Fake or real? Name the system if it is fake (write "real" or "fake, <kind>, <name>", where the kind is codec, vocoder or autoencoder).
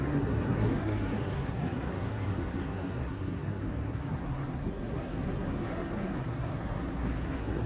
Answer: fake, codec, SNAC